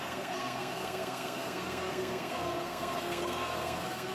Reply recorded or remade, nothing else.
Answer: remade